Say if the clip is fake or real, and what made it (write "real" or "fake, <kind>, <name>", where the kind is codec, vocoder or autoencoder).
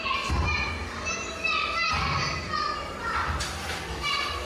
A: fake, vocoder, BigVGAN v2